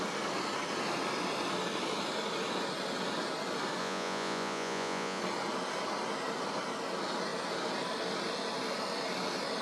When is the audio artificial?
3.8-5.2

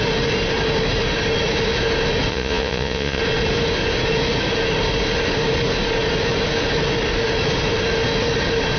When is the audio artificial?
2.3-3.2

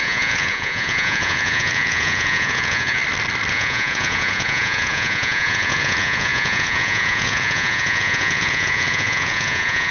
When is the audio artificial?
0.0-3.0; 3.5-9.9

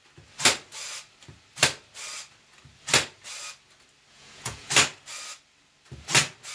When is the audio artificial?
4.1-4.7

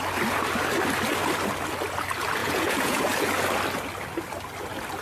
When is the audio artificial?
2.4-3.0

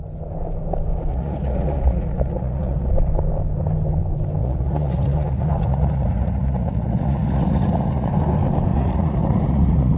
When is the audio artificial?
1.1-2.9; 4.4-8.1; 8.7-10.0

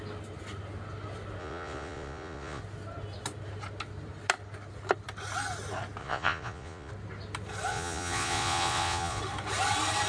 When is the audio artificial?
1.4-2.6; 6.0-6.9; 7.7-9.2

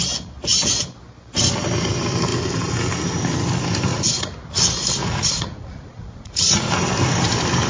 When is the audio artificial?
3.9-4.6; 5.0-6.7